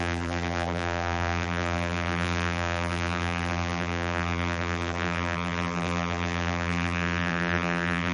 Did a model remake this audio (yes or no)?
yes